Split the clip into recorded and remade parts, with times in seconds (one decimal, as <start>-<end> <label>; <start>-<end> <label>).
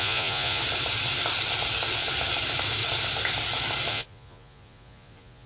0.0-0.6 remade; 0.6-3.9 recorded; 3.9-5.5 remade